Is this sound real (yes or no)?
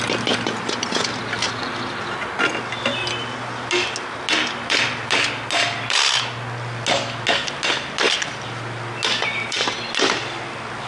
yes